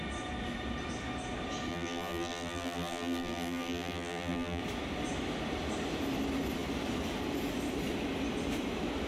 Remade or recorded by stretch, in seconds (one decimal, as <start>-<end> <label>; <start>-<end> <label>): 0.0-1.7 recorded; 1.7-4.6 remade; 4.6-9.1 recorded